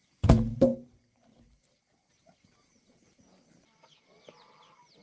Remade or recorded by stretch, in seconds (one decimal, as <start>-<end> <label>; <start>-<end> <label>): 0.0-5.0 recorded